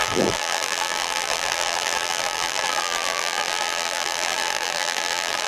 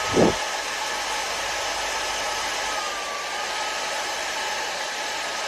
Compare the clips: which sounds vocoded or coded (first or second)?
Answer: first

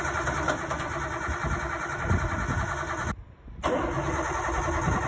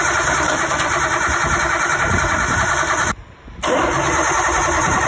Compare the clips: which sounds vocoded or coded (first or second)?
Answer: second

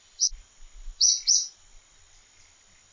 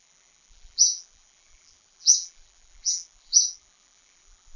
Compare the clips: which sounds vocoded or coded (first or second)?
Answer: second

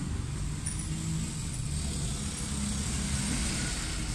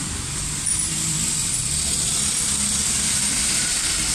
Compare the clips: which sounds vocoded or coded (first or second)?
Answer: second